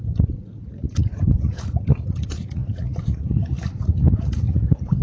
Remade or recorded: remade